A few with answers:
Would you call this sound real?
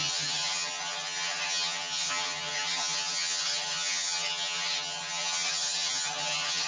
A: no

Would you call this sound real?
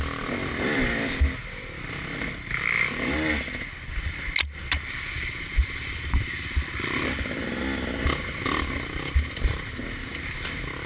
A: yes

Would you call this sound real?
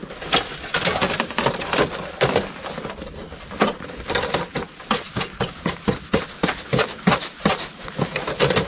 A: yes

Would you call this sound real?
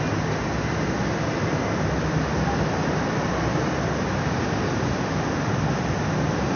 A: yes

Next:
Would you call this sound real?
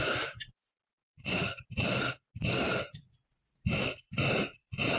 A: yes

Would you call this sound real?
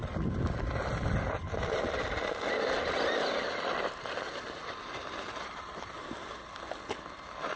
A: yes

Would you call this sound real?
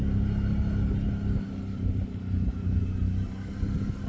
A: yes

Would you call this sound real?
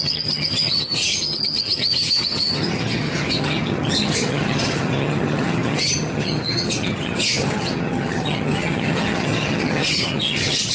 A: no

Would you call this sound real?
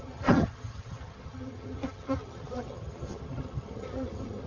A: no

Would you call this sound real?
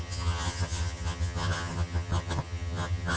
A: no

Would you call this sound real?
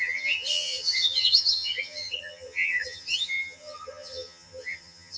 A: no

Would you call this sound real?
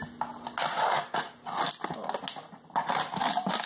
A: yes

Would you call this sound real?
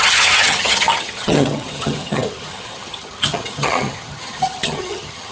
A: no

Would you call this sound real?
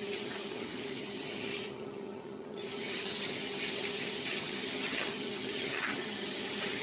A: no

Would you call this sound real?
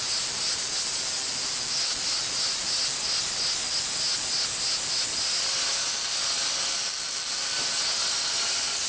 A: yes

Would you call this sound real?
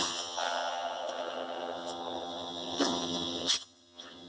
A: no